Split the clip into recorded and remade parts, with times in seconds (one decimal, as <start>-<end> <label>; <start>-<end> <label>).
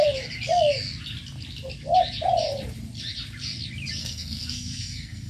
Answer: 0.0-4.0 recorded; 4.0-5.3 remade